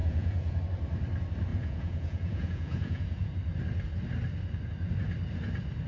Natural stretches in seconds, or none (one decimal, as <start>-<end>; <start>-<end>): 0.6-1.5; 3.3-5.9